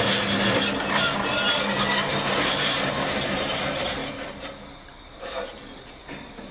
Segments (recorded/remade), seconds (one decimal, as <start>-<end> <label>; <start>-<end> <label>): 0.0-6.5 recorded